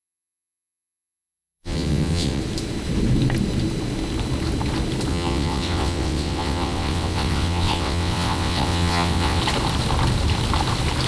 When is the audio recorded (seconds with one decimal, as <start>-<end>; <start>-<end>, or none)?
2.4-5.1; 9.4-11.1